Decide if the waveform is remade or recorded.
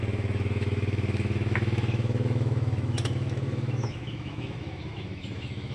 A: remade